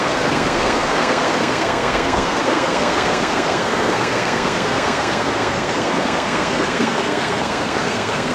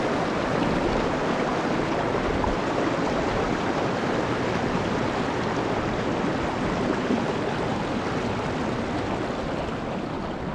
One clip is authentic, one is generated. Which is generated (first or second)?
first